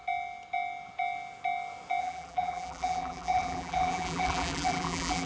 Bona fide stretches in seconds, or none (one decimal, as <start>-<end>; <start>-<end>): 0.0-2.0

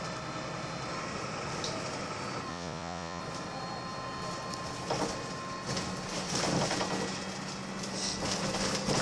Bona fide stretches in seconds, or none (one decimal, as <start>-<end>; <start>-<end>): 0.0-2.5; 3.2-9.0

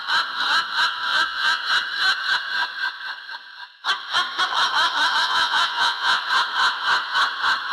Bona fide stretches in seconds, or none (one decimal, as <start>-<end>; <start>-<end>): 0.0-1.1; 1.6-5.2; 6.2-7.7

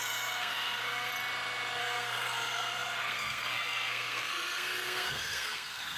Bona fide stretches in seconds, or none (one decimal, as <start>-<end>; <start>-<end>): 1.1-1.8

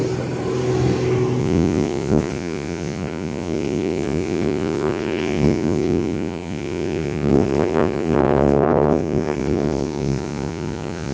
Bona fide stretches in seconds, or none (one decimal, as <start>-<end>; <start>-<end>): 0.0-1.4

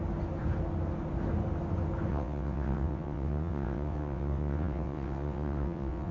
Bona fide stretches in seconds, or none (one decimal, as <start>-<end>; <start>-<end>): 0.0-2.1